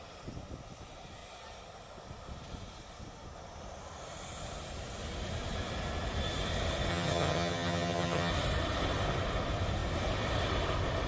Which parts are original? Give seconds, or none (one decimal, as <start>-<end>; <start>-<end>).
0.0-6.9; 8.3-11.1